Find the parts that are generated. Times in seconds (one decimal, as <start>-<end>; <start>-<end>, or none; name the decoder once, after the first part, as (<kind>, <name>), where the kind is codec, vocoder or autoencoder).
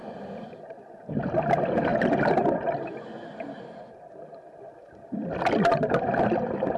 1.9-6.0 (vocoder, BigVGAN v2)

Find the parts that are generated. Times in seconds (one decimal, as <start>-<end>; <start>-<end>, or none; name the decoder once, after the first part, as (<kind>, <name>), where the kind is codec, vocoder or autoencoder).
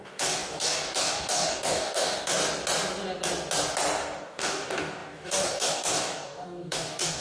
0.0-2.4 (codec, DAC); 4.2-7.2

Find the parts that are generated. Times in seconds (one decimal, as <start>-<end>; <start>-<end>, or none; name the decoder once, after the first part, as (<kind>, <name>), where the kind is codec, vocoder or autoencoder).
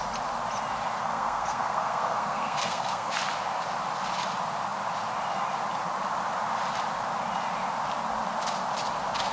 1.0-3.1 (codec, SNAC)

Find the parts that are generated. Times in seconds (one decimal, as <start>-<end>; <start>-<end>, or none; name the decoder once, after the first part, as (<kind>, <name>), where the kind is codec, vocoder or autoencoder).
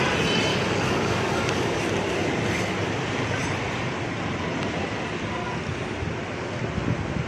0.5-1.8 (codec, DAC)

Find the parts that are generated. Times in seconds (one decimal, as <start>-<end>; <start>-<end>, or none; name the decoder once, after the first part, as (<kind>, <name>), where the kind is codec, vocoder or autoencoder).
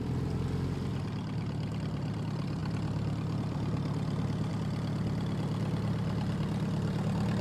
none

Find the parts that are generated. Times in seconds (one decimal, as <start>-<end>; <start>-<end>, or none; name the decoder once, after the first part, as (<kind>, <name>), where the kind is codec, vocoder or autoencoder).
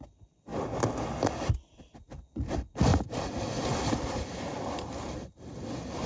none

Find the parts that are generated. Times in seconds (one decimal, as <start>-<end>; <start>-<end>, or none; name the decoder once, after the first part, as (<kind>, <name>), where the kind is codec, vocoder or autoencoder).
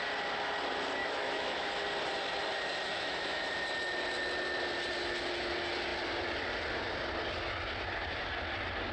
1.0-1.7 (autoencoder, DAC-VAE); 2.9-3.5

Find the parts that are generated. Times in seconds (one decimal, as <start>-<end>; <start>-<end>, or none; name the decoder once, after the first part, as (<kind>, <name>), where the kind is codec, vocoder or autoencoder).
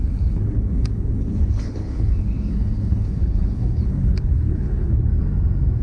0.0-5.1 (codec, HILCodec)